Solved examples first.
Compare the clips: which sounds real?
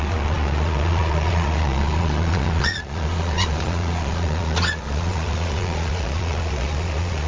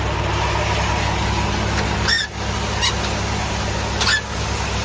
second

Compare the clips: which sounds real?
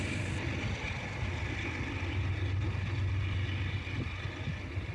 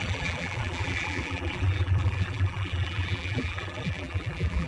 first